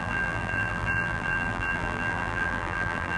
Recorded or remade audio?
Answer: remade